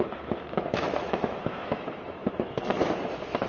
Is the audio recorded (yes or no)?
no